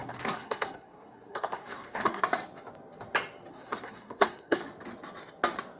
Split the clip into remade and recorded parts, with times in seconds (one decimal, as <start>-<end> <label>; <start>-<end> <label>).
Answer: 0.0-2.2 remade; 2.2-3.5 recorded; 3.5-4.6 remade; 4.6-5.8 recorded